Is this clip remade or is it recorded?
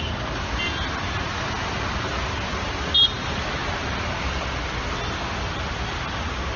recorded